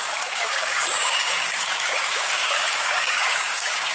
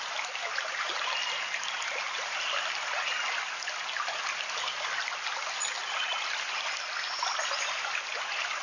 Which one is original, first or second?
second